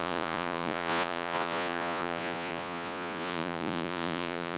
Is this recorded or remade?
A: remade